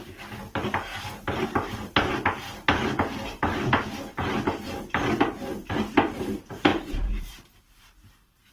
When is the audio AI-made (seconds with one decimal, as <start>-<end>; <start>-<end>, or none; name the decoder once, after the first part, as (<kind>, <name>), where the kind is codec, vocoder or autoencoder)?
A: 0.9-1.7 (vocoder, BigVGAN v2); 6.7-8.5